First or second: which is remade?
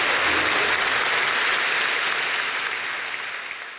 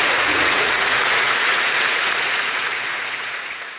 second